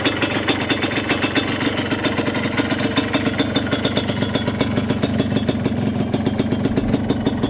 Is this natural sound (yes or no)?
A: yes